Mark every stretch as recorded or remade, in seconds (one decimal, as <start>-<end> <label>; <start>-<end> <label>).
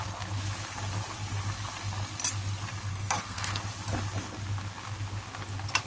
0.0-2.9 recorded; 2.9-3.6 remade; 3.6-5.9 recorded